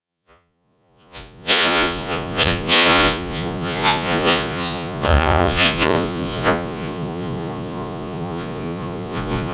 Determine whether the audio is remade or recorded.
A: remade